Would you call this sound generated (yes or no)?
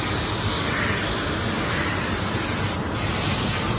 no